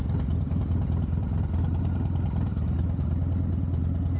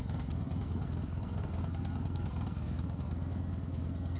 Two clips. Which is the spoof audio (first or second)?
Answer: second